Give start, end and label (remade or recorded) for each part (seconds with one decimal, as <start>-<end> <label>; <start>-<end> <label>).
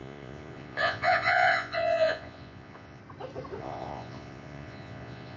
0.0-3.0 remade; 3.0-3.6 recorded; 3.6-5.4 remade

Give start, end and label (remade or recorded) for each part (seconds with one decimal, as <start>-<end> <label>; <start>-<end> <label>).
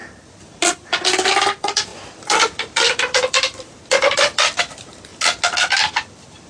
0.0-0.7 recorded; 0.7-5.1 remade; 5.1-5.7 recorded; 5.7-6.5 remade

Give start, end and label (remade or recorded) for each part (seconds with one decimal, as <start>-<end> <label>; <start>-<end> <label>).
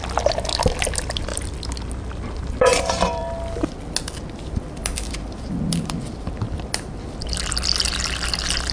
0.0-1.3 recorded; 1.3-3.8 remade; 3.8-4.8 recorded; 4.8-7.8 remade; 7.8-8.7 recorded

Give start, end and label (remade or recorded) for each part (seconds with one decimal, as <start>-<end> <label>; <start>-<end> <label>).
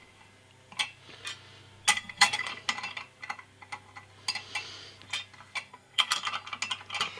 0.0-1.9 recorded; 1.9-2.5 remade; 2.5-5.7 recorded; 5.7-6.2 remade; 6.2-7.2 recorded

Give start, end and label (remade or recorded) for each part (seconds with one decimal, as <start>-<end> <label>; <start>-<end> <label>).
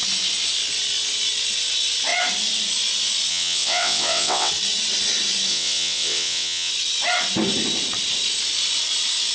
0.0-3.3 recorded; 3.3-4.5 remade; 4.5-5.5 recorded; 5.5-6.7 remade; 6.7-9.3 recorded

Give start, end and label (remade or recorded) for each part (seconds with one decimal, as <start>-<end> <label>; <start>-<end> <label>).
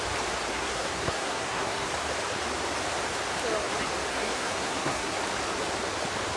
0.0-0.5 recorded; 0.5-1.9 remade; 1.9-4.1 recorded; 4.1-5.2 remade; 5.2-6.4 recorded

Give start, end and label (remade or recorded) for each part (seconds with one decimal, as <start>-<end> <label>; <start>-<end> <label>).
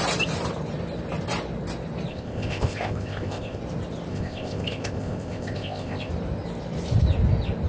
0.0-2.1 recorded; 2.1-3.6 remade; 3.6-4.1 recorded; 4.1-6.1 remade; 6.1-7.7 recorded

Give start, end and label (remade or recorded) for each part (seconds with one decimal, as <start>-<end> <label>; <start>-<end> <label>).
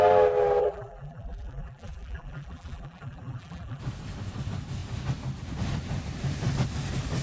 0.0-0.6 recorded; 0.6-3.8 remade; 3.8-7.2 recorded